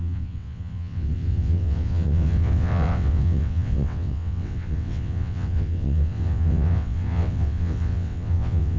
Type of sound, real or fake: fake